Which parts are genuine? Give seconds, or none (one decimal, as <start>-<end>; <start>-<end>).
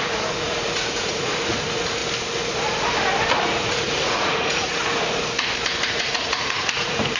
2.0-3.4; 4.8-5.9